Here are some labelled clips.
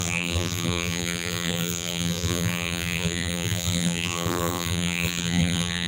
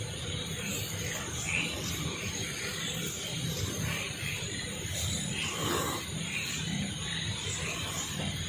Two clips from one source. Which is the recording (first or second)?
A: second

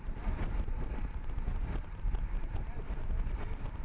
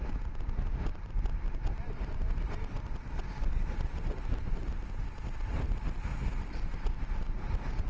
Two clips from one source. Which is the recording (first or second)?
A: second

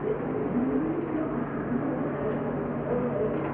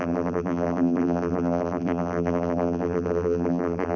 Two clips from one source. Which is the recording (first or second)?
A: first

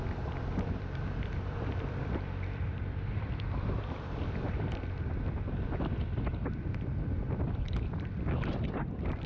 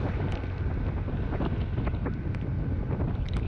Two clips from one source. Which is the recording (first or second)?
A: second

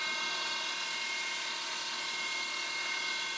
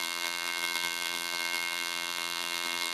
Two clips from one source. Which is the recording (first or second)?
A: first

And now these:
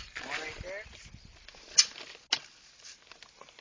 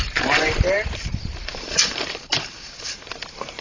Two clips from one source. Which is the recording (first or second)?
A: first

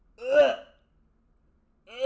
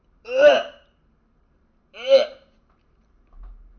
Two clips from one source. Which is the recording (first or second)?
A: first